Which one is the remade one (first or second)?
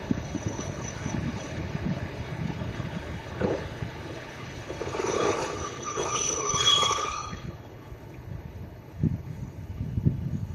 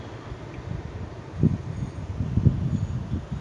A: first